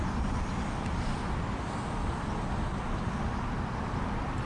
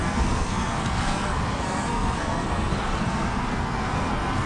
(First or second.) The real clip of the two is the first